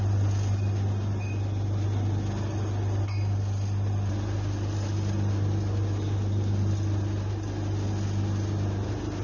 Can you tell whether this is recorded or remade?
recorded